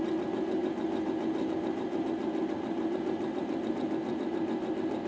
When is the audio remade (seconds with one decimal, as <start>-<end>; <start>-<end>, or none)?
none